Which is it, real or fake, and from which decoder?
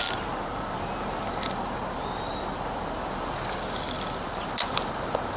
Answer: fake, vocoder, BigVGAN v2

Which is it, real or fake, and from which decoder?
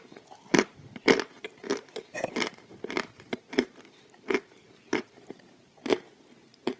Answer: fake, vocoder, BigVGAN v2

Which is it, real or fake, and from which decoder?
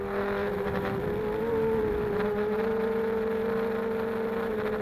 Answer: real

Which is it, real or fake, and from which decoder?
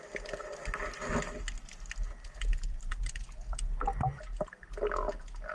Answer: real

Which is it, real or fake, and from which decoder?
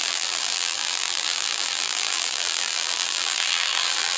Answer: fake, vocoder, BigVGAN v2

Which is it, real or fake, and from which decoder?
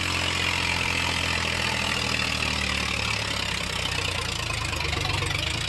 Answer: real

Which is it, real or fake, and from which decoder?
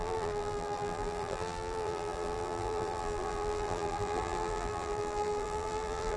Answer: fake, vocoder, BigVGAN v2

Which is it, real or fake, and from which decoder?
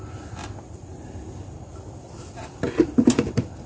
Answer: fake, vocoder, BigVGAN v2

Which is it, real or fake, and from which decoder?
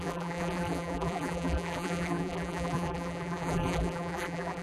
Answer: fake, vocoder, BigVGAN v2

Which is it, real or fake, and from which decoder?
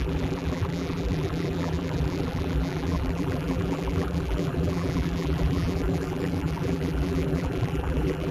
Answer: fake, vocoder, BigVGAN v2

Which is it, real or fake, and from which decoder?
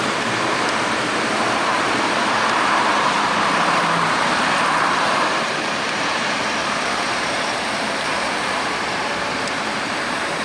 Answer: fake, vocoder, BigVGAN v2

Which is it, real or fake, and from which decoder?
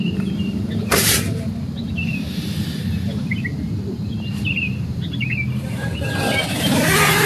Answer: fake, vocoder, BigVGAN v2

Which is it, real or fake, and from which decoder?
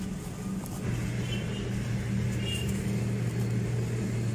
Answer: real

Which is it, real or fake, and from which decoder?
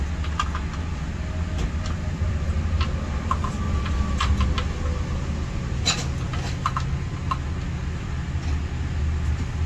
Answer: real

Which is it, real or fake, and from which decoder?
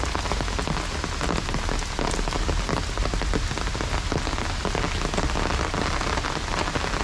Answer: real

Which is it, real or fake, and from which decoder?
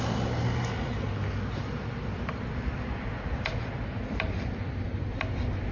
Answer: real